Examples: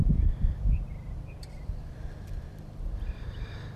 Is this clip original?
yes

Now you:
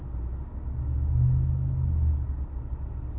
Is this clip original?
yes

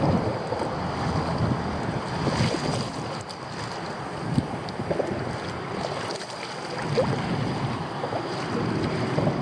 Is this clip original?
yes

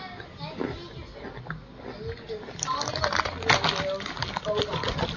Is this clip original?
yes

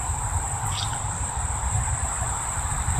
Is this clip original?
yes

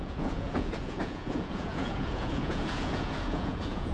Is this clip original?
no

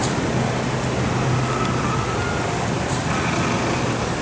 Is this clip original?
yes